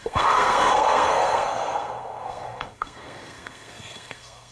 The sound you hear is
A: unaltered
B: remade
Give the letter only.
B